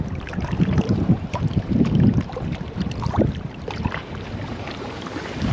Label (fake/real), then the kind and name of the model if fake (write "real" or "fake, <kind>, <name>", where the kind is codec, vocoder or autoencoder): fake, vocoder, BigVGAN v2